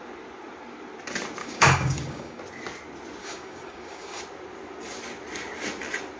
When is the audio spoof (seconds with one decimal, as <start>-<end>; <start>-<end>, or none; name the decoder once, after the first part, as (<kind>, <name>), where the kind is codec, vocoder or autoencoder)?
1.4-2.4 (codec, DAC); 3.2-4.2